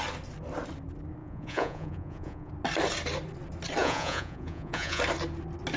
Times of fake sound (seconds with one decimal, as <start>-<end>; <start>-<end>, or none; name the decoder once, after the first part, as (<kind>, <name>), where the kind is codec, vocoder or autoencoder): 1.2-2.5 (vocoder, Vocos); 3.8-5.0